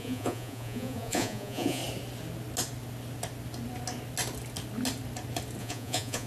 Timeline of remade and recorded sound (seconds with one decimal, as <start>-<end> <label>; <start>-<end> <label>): 0.0-1.8 remade; 1.8-5.6 recorded; 5.6-6.3 remade